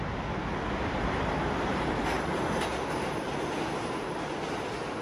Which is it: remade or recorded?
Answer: recorded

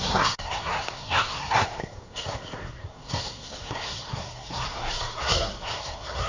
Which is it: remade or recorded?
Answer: remade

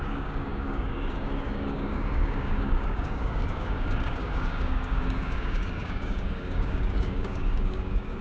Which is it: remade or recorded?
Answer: remade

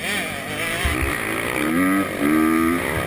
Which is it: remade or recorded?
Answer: recorded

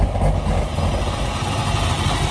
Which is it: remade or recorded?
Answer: recorded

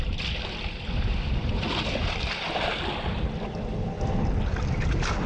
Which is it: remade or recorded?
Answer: recorded